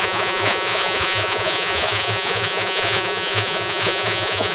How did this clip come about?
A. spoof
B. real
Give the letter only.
A